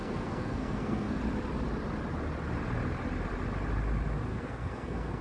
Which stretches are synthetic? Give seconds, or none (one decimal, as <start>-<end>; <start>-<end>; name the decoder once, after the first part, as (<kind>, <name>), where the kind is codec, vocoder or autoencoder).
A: 0.0-1.2 (codec, SNAC); 4.3-5.2